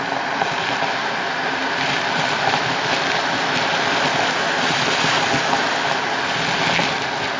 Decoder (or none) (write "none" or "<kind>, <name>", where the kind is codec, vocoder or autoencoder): none